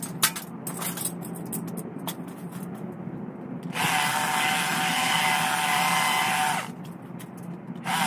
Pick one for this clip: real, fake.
real